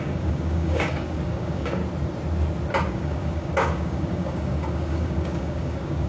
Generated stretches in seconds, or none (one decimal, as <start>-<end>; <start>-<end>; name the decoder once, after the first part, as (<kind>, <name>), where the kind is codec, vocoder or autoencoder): 0.0-1.8 (codec, DAC); 2.9-6.1